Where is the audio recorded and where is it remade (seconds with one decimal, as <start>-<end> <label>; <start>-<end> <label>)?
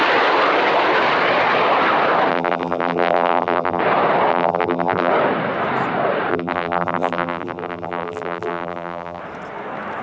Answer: 0.0-2.3 recorded; 2.3-3.8 remade; 3.8-4.3 recorded; 4.3-5.1 remade; 5.1-6.3 recorded; 6.3-9.2 remade; 9.2-10.0 recorded